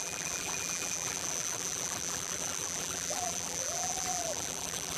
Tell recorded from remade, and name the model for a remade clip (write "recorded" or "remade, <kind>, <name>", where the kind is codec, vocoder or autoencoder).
remade, vocoder, BigVGAN v2